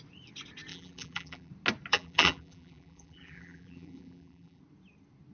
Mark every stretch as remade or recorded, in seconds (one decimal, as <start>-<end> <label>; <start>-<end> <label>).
0.0-0.7 recorded; 0.7-1.5 remade; 1.5-1.9 recorded; 1.9-4.6 remade; 4.6-5.3 recorded